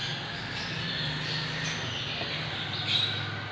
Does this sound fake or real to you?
real